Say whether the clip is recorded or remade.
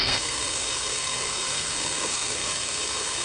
remade